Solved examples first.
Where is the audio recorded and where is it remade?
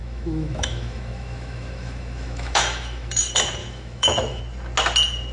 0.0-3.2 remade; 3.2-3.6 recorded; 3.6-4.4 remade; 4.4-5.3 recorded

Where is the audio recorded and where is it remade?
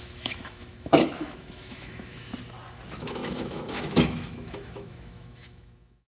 0.0-2.3 remade; 2.3-3.0 recorded; 3.0-6.2 remade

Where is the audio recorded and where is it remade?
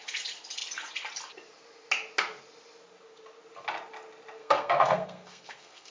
0.0-4.4 recorded; 4.4-5.9 remade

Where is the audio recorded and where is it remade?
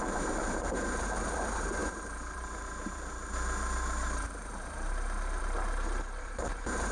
0.0-6.9 remade